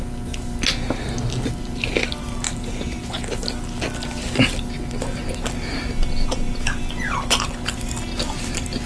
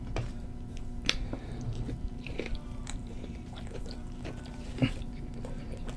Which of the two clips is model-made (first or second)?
second